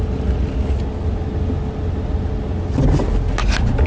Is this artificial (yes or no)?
no